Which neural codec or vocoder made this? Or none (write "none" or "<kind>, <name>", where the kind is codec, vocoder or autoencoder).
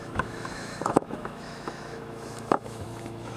autoencoder, DAC-VAE